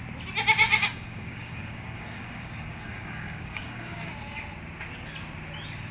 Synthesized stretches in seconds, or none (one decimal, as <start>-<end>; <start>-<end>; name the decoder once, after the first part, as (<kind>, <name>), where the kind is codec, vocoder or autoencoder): 0.6-4.1 (codec, DAC)